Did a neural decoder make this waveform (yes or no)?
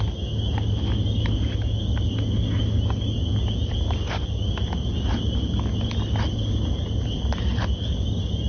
no